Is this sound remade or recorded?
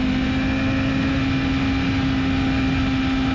recorded